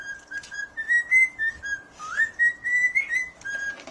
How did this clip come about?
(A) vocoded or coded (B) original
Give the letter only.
B